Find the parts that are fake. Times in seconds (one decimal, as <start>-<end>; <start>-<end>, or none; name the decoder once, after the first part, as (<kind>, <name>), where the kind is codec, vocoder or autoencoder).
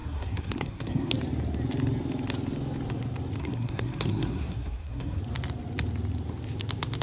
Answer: 0.0-1.1 (codec, SNAC); 3.4-5.2